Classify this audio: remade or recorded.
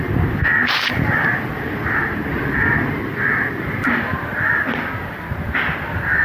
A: recorded